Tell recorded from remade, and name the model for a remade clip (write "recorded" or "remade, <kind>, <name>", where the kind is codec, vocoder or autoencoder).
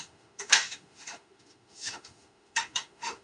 remade, autoencoder, DAC-VAE